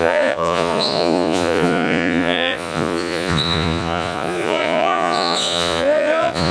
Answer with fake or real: fake